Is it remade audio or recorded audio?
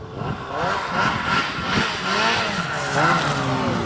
recorded